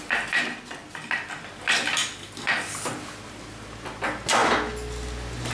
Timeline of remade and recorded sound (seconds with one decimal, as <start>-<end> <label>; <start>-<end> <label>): 0.0-5.5 recorded